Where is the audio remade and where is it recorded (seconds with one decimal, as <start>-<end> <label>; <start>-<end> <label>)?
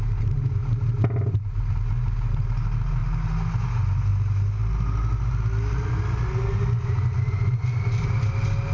0.0-8.7 recorded